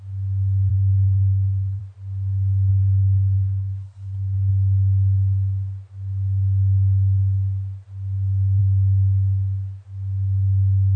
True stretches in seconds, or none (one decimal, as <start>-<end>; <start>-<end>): 0.0-0.7; 1.8-2.7; 4.5-11.0